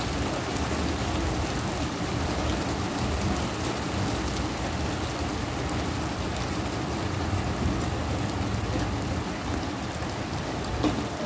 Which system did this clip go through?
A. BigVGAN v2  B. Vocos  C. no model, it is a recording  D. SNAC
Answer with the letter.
C